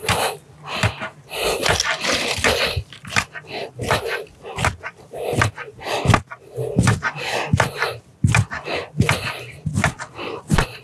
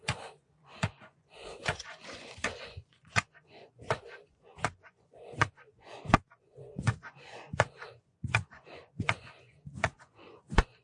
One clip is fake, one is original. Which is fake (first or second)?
second